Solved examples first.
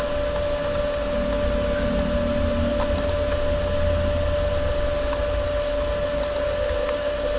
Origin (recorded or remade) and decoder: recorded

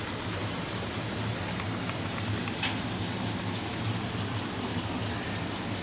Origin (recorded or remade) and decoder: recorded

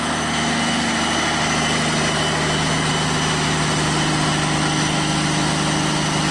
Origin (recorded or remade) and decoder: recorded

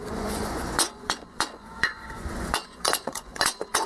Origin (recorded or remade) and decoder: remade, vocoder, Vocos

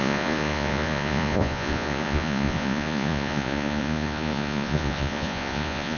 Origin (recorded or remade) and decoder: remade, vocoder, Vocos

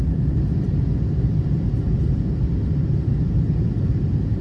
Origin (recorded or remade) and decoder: recorded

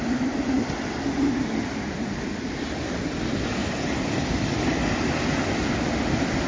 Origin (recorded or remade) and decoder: recorded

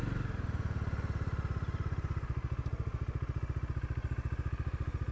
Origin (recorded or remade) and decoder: recorded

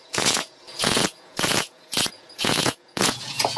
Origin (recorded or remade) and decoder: remade, vocoder, Vocos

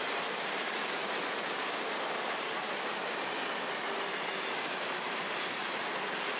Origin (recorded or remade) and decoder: recorded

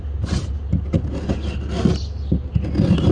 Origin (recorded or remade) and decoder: recorded